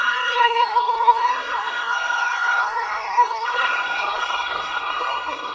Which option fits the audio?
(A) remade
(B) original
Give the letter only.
A